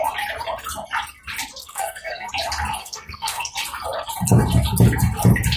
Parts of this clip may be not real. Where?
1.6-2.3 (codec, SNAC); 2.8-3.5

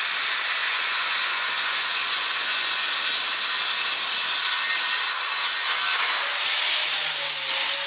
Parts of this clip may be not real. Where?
0.6-2.9 (vocoder, Vocos)

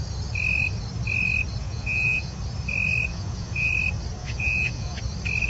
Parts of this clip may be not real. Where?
1.6-2.4 (vocoder, Vocos); 3.1-3.7; 4.2-5.0